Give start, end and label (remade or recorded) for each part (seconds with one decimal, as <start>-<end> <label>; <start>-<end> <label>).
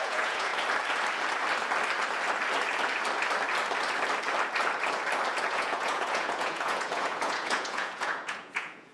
0.0-0.5 remade; 0.5-5.4 recorded; 5.4-8.9 remade